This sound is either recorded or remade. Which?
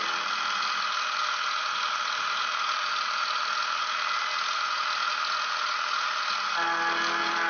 recorded